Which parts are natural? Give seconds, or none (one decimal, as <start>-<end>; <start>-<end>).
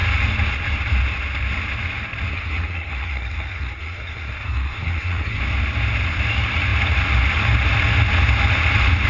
0.0-2.3; 5.4-9.1